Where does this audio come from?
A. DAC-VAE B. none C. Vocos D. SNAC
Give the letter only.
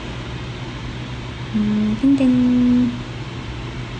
B